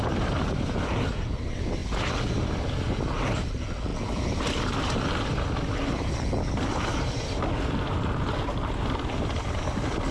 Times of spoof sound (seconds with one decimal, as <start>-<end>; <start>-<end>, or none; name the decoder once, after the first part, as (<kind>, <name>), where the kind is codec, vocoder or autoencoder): none